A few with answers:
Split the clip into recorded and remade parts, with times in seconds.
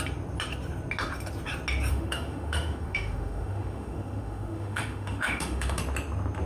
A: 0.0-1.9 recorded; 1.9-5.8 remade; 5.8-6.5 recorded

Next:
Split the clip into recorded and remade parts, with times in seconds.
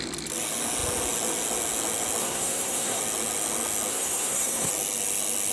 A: 0.0-2.2 recorded; 2.2-3.0 remade; 3.0-3.9 recorded; 3.9-4.7 remade; 4.7-5.5 recorded